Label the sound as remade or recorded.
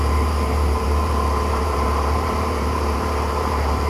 remade